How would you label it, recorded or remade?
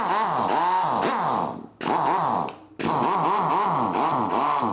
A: recorded